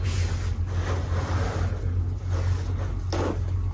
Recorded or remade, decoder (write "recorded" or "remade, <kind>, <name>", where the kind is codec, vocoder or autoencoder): recorded